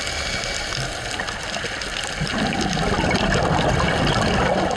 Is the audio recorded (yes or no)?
yes